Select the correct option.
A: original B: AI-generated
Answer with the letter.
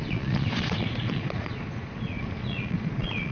B